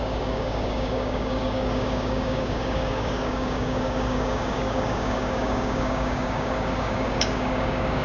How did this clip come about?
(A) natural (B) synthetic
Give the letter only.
B